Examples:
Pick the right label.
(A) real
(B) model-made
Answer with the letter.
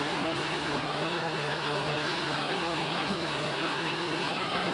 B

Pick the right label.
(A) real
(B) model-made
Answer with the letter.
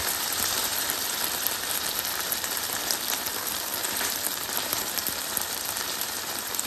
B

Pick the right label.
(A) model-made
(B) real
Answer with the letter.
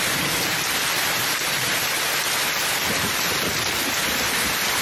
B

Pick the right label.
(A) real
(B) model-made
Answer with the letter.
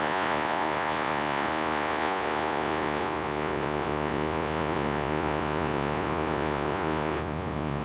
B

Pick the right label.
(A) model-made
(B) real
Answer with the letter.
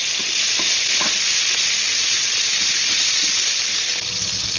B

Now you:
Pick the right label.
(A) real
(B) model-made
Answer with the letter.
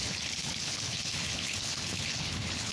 B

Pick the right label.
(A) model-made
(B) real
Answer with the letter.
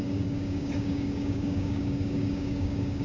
A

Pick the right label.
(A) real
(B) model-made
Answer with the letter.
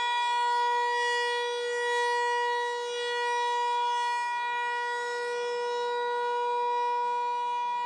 A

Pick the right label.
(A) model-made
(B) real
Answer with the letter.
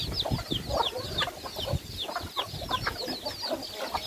B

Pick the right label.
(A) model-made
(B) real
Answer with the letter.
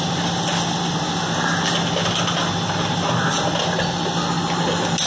B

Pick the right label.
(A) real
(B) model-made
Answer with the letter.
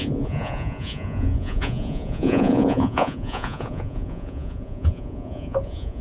B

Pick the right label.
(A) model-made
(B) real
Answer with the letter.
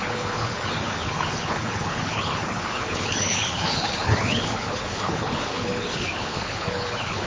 A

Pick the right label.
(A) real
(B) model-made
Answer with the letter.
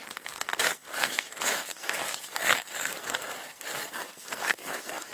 B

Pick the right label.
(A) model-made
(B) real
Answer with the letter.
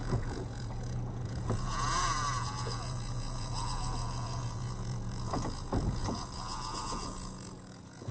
A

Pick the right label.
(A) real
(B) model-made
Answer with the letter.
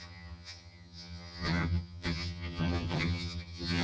B